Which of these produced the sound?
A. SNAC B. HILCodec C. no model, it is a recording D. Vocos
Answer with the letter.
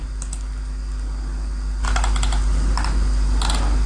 C